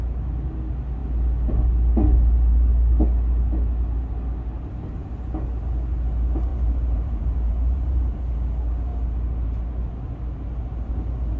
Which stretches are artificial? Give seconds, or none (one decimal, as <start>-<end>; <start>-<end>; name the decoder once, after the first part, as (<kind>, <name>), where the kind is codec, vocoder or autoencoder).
6.5-8.2 (vocoder, BigVGAN v2)